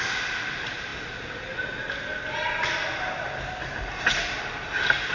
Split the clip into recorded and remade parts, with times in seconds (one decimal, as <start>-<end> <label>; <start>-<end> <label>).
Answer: 0.0-5.1 recorded